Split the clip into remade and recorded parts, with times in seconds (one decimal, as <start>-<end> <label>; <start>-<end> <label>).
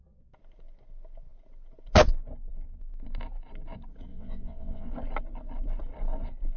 0.0-4.1 recorded; 4.1-4.9 remade; 4.9-6.6 recorded